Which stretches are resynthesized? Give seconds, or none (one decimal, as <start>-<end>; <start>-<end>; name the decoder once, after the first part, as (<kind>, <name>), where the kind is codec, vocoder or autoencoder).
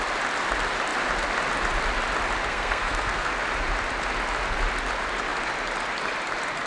2.5-3.3 (codec, SNAC)